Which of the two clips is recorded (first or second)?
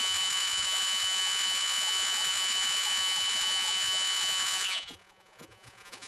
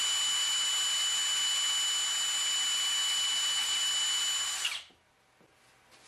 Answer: second